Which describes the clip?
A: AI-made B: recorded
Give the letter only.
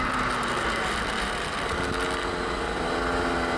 B